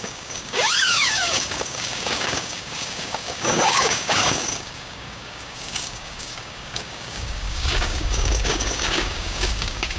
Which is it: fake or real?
fake